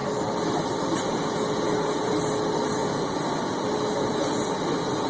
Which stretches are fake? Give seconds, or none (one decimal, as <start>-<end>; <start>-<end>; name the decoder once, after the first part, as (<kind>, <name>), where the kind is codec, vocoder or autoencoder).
2.8-3.6 (vocoder, Vocos)